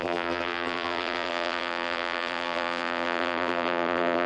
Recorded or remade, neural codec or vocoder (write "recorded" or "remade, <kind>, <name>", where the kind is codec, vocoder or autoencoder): remade, vocoder, BigVGAN v2